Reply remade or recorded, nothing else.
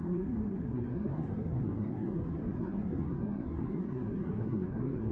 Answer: remade